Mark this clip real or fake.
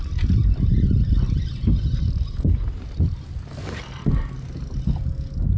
real